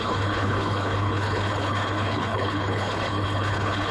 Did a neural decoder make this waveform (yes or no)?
yes